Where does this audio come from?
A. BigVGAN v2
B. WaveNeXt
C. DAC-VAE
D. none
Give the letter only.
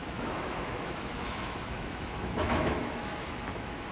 C